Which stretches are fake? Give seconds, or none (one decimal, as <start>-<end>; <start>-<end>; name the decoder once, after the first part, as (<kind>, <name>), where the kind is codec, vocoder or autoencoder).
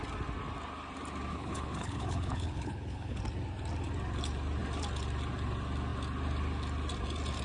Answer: 1.3-3.2 (codec, HILCodec)